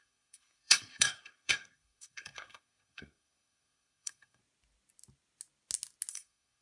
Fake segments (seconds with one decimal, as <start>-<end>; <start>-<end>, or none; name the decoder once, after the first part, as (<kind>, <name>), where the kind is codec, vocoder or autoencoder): 0.0-4.4 (codec, SNAC); 6.1-6.6